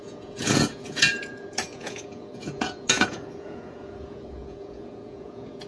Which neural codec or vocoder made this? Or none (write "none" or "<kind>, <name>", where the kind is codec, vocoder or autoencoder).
vocoder, Vocos